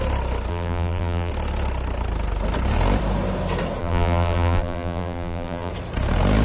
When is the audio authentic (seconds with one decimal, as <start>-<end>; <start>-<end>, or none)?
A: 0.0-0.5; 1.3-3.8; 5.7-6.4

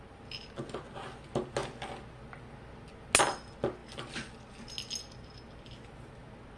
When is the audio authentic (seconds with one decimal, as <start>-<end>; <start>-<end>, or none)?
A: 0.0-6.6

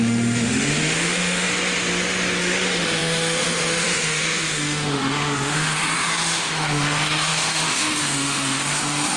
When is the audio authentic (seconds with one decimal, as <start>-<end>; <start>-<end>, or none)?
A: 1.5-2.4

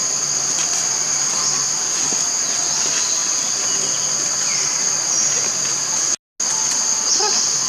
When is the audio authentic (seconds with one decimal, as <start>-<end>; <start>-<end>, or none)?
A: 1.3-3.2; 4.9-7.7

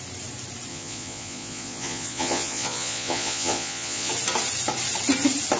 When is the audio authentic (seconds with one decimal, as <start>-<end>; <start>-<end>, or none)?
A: 0.0-0.7; 4.1-5.6

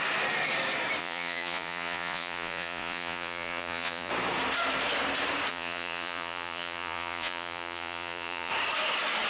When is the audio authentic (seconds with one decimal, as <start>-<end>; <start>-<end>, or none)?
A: 0.0-1.0; 4.1-5.5; 8.5-9.3

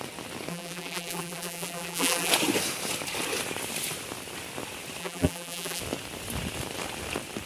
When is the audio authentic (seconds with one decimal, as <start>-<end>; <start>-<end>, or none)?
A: 0.0-0.5; 2.3-5.0; 5.8-7.5